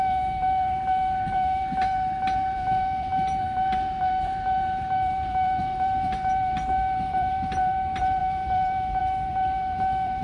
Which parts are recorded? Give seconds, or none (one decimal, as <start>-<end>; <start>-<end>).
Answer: none